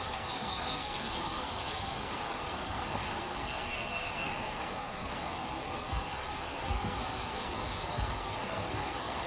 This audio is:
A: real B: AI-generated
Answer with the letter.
B